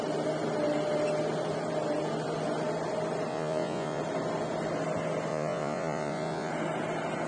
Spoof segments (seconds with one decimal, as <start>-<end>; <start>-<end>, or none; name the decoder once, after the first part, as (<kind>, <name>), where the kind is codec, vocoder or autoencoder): 3.3-4.0 (vocoder, Vocos); 5.3-6.5